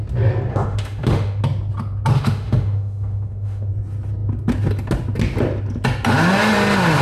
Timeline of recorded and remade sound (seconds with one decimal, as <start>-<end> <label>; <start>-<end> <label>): 0.0-0.5 recorded; 0.5-1.4 remade; 1.4-2.1 recorded; 2.1-3.7 remade; 3.7-7.0 recorded